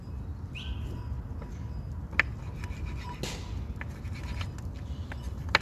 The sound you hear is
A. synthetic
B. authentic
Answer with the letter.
B